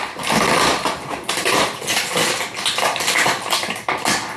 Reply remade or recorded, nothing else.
recorded